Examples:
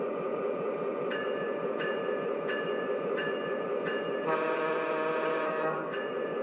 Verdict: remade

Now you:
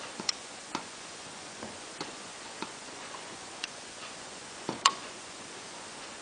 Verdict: remade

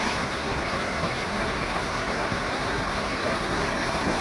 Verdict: remade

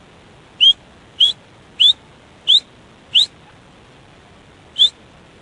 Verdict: recorded